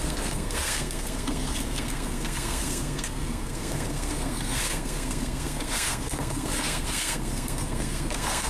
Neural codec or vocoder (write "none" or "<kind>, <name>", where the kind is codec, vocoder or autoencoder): codec, SNAC